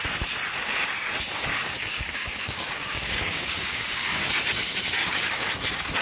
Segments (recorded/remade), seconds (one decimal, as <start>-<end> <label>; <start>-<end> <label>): 0.0-1.5 recorded; 1.5-4.4 remade; 4.4-5.0 recorded; 5.0-5.5 remade; 5.5-6.0 recorded